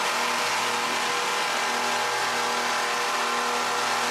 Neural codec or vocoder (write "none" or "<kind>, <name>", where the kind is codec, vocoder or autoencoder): none